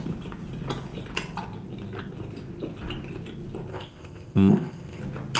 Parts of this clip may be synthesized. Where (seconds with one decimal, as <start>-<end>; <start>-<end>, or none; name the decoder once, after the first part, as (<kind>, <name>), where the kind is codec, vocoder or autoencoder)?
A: 3.7-5.0 (codec, ZipCodec)